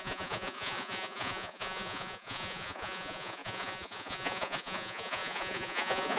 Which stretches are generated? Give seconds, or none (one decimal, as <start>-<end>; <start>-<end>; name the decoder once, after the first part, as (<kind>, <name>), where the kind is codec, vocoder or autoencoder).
0.0-6.2 (vocoder, Vocos)